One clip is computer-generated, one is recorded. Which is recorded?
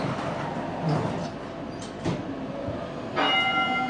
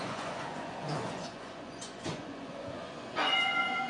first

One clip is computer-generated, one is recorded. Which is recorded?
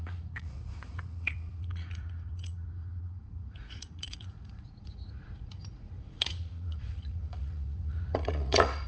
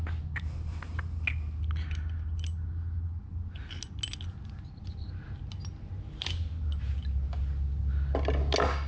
second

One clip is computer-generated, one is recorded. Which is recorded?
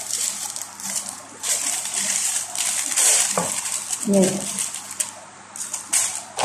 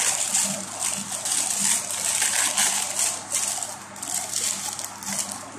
second